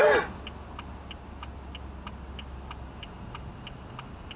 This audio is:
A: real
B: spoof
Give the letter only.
A